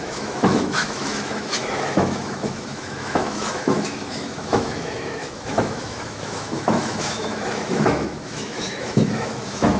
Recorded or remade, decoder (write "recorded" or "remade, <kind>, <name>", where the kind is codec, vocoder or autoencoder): remade, autoencoder, DAC-VAE